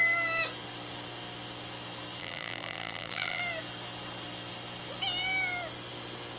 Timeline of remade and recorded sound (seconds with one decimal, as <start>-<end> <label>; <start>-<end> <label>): 0.0-2.2 recorded; 2.2-3.4 remade; 3.4-6.4 recorded